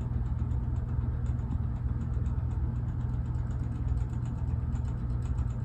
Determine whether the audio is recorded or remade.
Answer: recorded